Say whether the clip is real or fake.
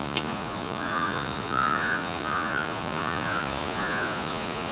fake